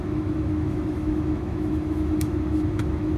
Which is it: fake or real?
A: fake